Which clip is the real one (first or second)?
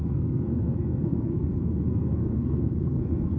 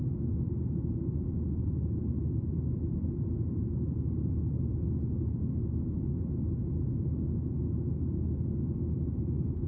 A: second